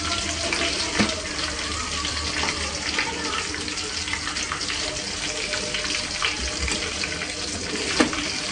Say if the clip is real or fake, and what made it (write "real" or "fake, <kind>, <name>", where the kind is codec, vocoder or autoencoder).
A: real